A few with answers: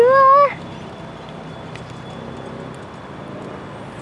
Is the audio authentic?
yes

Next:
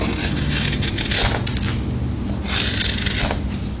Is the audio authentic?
yes